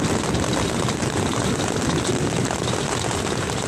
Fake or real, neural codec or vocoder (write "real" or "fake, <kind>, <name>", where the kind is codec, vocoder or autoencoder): real